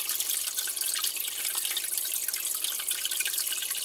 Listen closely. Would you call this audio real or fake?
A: real